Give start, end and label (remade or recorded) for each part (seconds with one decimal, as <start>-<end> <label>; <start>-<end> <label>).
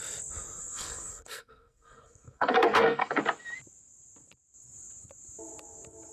0.0-0.6 recorded; 0.6-3.2 remade; 3.2-6.1 recorded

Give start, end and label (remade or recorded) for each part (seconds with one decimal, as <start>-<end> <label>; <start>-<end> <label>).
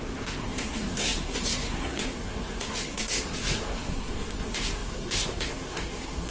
0.0-6.3 remade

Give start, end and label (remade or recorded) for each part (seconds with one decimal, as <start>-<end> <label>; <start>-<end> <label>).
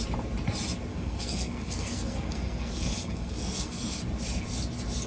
0.0-0.9 recorded; 0.9-4.0 remade; 4.0-5.1 recorded